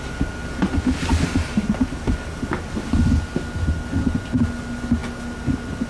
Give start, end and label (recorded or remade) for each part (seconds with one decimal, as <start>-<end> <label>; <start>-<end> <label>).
0.0-5.9 recorded